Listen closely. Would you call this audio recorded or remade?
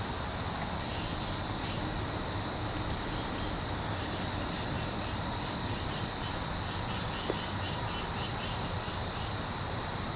recorded